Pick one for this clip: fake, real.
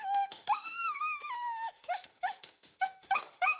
fake